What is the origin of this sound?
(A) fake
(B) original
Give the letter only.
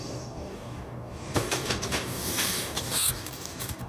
A